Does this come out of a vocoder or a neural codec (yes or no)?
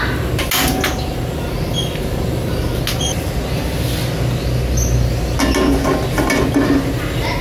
no